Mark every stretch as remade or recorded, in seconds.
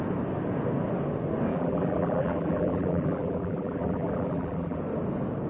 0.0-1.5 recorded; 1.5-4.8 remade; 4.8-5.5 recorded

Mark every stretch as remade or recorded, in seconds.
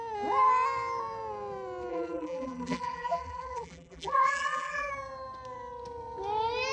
0.0-1.9 recorded; 1.9-4.9 remade; 4.9-6.7 recorded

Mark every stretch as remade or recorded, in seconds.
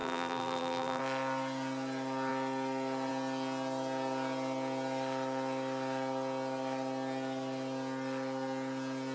0.0-1.0 remade; 1.0-9.1 recorded